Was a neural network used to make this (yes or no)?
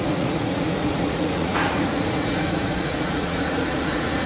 yes